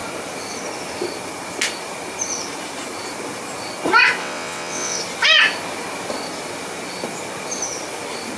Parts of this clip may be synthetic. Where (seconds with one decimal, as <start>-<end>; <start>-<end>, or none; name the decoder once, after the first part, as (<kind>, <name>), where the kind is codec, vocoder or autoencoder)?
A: 4.2-5.0 (vocoder, WaveNeXt)